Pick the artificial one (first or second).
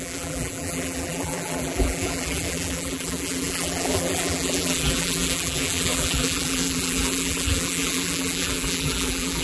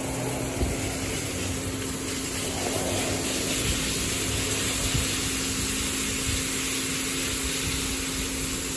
first